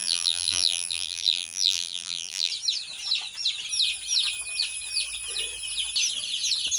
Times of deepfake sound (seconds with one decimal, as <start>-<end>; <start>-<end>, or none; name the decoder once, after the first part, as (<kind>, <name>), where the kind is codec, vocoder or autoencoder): 0.0-2.5 (vocoder, BigVGAN v2)